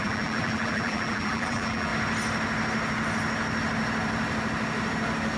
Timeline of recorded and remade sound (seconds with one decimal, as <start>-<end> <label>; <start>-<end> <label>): 0.0-1.9 remade; 1.9-5.4 recorded